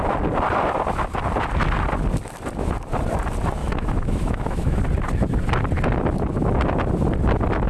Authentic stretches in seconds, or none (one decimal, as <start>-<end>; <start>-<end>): 0.0-3.6; 4.8-7.7